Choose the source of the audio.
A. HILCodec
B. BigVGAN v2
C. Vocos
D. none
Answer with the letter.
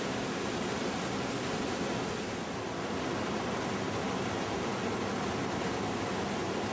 D